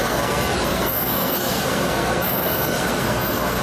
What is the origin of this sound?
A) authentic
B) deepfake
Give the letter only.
B